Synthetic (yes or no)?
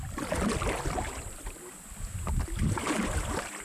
no